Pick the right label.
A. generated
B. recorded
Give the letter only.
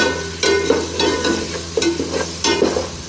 B